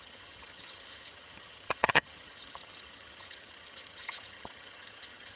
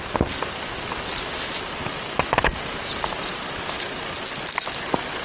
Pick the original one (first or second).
second